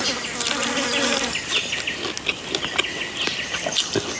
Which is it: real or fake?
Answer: real